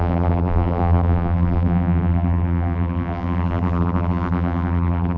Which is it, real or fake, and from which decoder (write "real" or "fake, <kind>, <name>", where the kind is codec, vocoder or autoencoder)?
fake, vocoder, BigVGAN v2